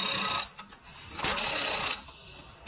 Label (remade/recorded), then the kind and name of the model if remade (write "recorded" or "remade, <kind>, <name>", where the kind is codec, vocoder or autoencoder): recorded